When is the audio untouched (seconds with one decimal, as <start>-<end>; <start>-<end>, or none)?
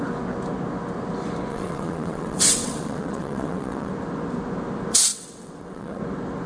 0.0-1.5; 3.9-5.1; 6.0-6.5